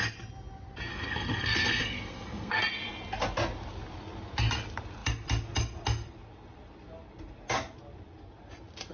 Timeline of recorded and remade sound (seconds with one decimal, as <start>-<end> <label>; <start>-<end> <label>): 0.0-0.9 recorded; 0.9-2.6 remade; 2.6-8.9 recorded